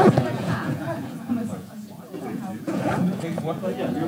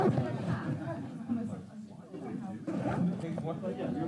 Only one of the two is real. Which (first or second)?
second